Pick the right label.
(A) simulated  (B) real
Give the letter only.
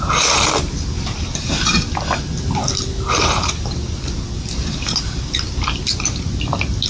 B